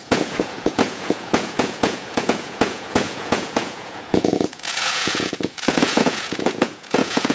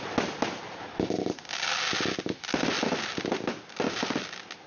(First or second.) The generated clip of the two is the first